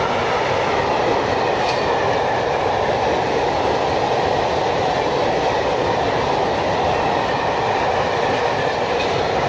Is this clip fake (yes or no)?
no